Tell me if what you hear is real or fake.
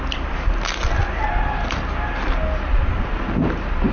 real